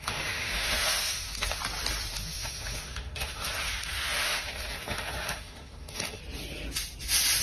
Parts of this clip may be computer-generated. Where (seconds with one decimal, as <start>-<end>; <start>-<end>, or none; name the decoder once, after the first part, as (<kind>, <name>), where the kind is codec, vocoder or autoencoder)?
0.0-1.6 (autoencoder, DAC-VAE); 2.1-6.2